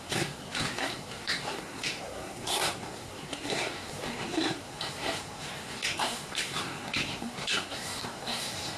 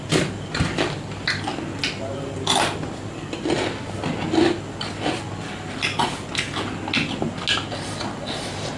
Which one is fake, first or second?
first